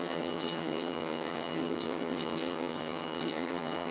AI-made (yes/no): yes